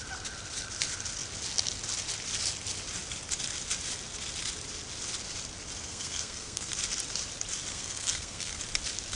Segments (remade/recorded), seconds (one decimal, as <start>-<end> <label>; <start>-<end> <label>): 0.0-5.8 recorded; 5.8-6.7 remade; 6.7-7.7 recorded; 7.7-8.6 remade; 8.6-9.1 recorded